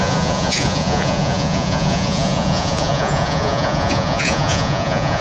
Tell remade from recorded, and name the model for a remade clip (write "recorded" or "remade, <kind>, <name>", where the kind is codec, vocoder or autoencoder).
remade, vocoder, Vocos